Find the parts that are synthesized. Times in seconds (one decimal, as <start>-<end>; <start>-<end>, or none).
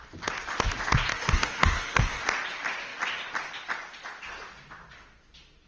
1.1-2.2